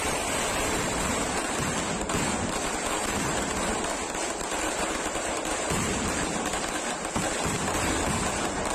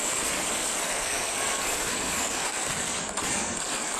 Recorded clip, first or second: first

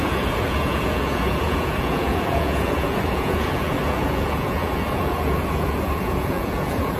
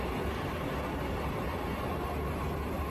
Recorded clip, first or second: second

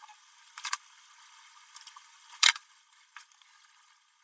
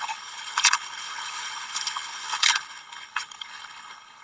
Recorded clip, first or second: first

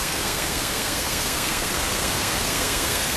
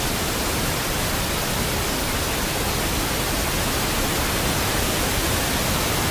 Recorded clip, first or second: second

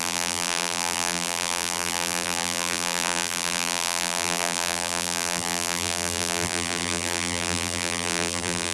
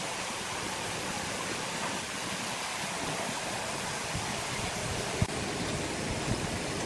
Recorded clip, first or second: second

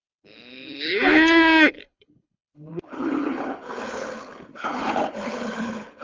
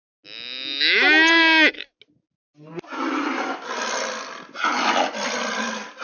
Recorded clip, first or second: second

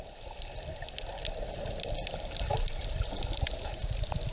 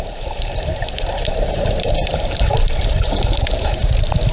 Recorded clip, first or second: first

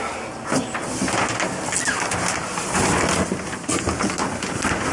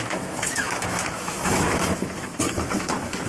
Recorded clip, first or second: first